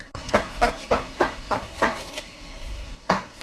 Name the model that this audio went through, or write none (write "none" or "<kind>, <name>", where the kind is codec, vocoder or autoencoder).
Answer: codec, SNAC